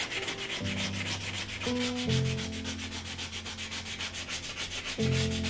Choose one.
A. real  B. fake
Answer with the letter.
A